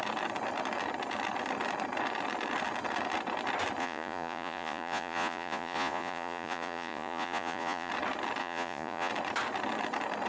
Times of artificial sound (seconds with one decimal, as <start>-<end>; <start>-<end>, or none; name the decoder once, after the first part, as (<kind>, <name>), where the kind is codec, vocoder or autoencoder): 3.8-7.9 (vocoder, Vocos); 8.4-9.1